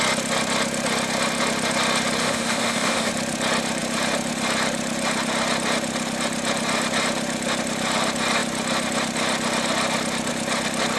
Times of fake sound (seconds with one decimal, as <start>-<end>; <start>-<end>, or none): 2.2-3.1